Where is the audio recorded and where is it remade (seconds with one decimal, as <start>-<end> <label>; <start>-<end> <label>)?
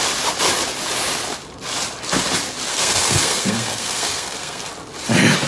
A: 0.0-2.7 recorded; 2.7-4.7 remade; 4.7-5.5 recorded